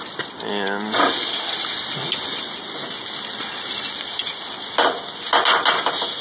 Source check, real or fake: real